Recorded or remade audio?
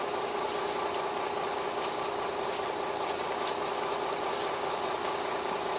recorded